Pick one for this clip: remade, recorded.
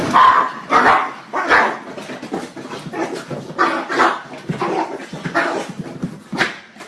recorded